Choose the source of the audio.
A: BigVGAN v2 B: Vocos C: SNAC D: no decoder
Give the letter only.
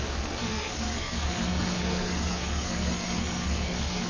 C